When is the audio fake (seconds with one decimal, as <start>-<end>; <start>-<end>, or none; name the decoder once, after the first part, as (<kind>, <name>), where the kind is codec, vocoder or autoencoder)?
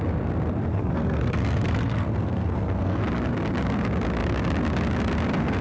0.7-3.0 (codec, SNAC)